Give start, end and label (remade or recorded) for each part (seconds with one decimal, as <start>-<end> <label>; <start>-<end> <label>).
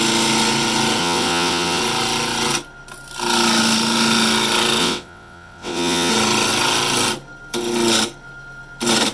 0.0-1.0 recorded; 1.0-1.8 remade; 1.8-4.8 recorded; 4.8-6.1 remade; 6.1-9.1 recorded